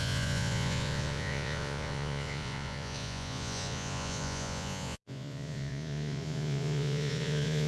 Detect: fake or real fake